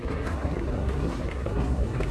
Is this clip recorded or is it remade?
remade